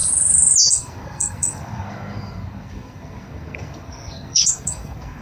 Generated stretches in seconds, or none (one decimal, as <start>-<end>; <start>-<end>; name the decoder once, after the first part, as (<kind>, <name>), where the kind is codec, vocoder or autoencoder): 0.7-5.2 (codec, SNAC)